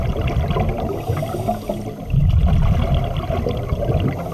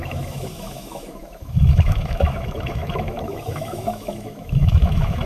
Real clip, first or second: first